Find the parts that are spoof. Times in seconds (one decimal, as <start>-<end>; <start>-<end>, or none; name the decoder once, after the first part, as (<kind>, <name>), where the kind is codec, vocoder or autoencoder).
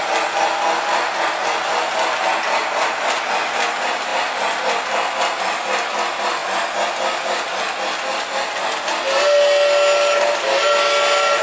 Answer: none